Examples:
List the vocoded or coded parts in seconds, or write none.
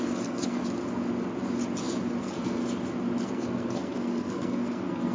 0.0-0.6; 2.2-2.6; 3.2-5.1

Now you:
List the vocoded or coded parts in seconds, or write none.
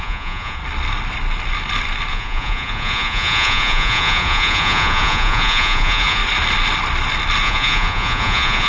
0.0-0.6; 2.1-6.2; 7.4-8.7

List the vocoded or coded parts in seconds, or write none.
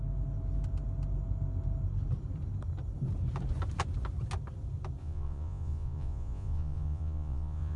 5.0-7.8